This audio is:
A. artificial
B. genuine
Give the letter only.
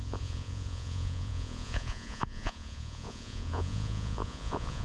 A